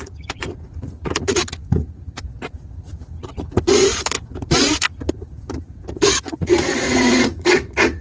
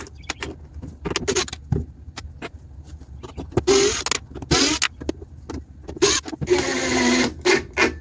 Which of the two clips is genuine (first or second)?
second